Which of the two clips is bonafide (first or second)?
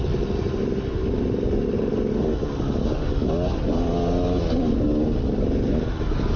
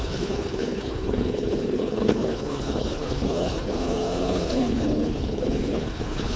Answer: first